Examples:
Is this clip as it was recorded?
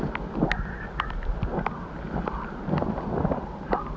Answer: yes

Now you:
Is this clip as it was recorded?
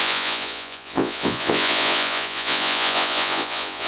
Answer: no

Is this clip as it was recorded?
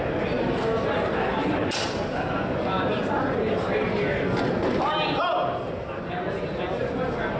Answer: yes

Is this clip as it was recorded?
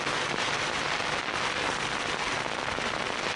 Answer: yes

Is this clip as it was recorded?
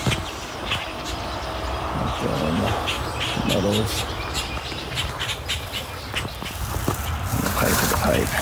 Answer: no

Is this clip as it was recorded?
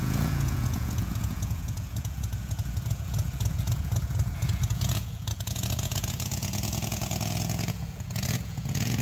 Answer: no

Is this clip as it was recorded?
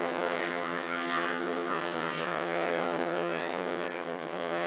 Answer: no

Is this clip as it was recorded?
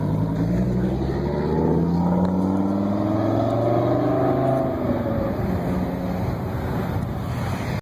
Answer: yes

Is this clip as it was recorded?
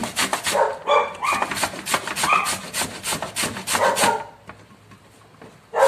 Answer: yes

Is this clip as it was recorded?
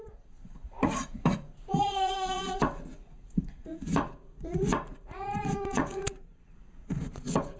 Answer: no